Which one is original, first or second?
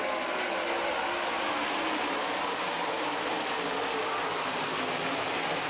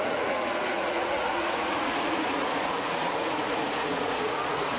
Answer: first